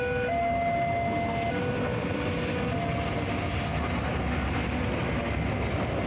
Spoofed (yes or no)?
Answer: no